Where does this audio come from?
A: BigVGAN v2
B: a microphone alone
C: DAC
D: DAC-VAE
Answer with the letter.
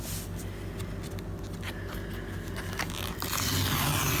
B